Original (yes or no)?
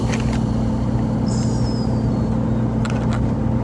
yes